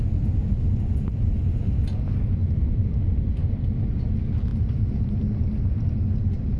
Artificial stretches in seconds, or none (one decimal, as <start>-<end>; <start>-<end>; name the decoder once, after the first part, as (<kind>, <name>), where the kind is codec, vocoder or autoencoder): none